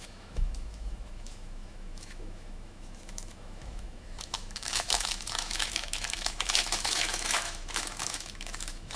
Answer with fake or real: fake